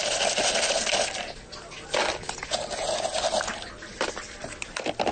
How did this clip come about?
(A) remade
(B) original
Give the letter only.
B